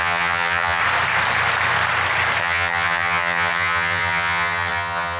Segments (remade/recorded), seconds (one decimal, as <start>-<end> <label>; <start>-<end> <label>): 0.0-0.8 remade; 0.8-2.4 recorded; 2.4-5.2 remade